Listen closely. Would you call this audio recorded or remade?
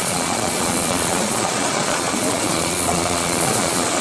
remade